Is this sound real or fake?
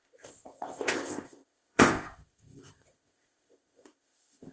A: fake